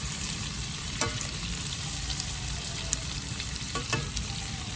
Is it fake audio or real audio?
fake